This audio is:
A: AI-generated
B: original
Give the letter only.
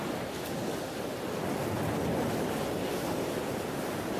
B